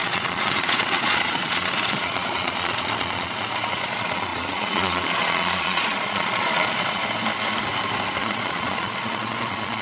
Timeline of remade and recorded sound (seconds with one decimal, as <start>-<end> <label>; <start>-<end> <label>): 0.0-7.0 remade; 7.0-8.2 recorded; 8.2-9.8 remade